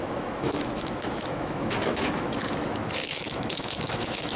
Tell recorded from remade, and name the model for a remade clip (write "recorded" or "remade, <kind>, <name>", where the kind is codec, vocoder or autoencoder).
remade, autoencoder, DAC-VAE